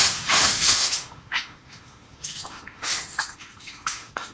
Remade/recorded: remade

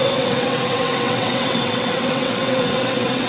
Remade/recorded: remade